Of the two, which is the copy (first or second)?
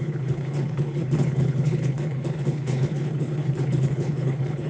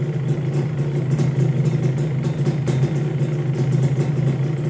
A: first